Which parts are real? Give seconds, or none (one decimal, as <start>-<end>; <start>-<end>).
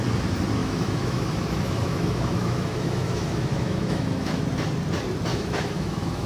0.0-0.6; 4.4-5.3